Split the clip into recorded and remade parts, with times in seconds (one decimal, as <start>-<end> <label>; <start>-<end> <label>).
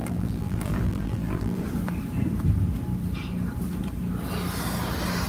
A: 0.0-1.6 remade; 1.6-5.3 recorded